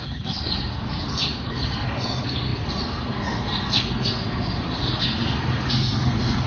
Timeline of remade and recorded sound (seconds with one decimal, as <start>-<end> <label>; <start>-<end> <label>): 0.0-6.5 remade